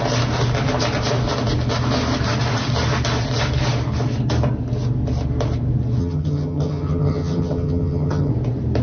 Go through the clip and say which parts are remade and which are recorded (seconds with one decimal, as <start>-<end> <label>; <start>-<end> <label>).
0.0-6.0 recorded; 6.0-8.3 remade; 8.3-8.8 recorded